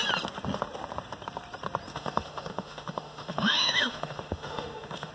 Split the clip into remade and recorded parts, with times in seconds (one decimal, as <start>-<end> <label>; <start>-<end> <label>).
0.0-1.9 recorded; 1.9-5.1 remade